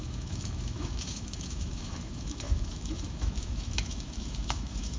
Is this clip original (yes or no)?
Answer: no